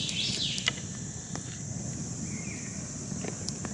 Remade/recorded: recorded